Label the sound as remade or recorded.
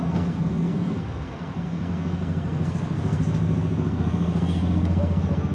remade